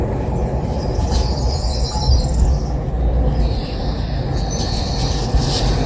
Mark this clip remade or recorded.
recorded